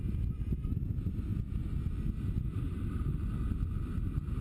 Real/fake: real